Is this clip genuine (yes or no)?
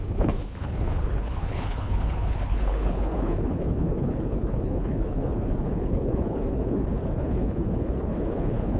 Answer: no